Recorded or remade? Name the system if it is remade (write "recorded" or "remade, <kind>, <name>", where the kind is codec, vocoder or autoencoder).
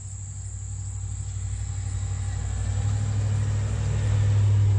recorded